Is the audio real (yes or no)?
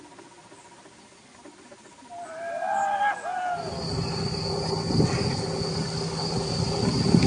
yes